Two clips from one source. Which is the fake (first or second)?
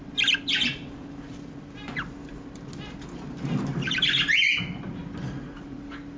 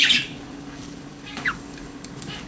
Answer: second